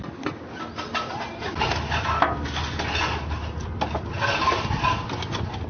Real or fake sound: real